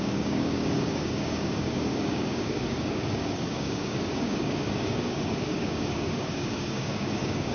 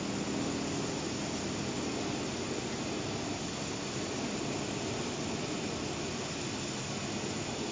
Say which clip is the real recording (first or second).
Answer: second